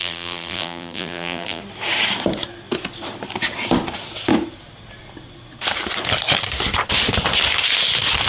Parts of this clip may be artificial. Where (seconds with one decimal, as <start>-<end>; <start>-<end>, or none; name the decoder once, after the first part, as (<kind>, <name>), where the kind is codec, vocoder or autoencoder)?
0.0-1.6 (vocoder, BigVGAN v2)